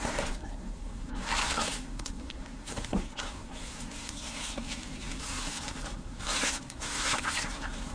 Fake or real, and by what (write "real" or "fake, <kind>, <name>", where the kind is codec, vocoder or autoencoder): fake, codec, SNAC